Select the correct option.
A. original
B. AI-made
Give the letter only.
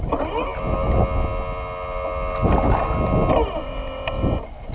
A